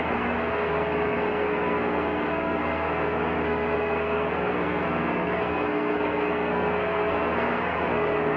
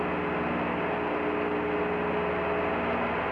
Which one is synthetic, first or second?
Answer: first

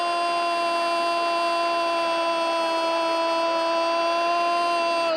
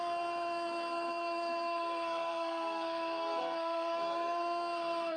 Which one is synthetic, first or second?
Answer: second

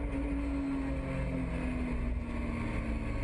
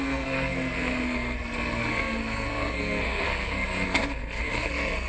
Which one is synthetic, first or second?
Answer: second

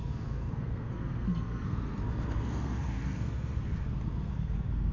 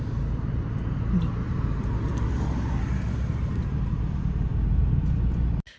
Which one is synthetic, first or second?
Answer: first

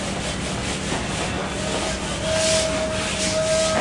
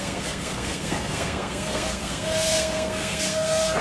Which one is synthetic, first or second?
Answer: second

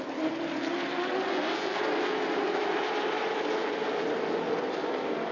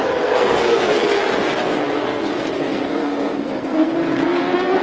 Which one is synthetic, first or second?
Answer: second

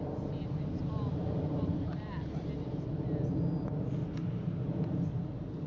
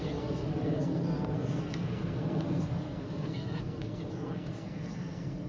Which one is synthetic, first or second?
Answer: second